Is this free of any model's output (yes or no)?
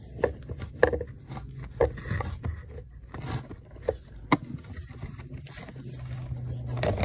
yes